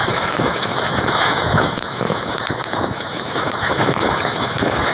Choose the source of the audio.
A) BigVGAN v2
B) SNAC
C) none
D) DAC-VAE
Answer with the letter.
D